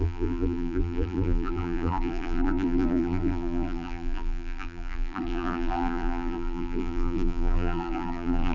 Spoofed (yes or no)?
yes